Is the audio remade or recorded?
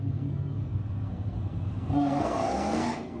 remade